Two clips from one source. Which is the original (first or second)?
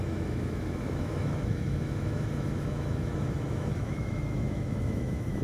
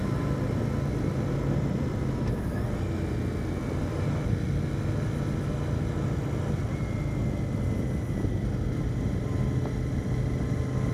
second